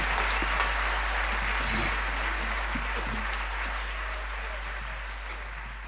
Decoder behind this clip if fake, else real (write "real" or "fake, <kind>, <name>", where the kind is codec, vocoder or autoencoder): real